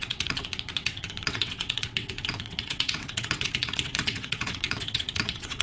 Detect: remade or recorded remade